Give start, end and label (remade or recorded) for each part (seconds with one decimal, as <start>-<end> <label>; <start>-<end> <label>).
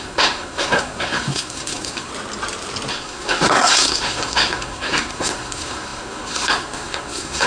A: 0.0-2.1 remade; 2.1-2.9 recorded; 2.9-7.5 remade